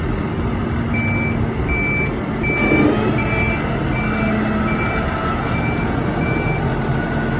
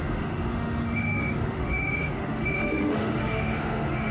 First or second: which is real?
first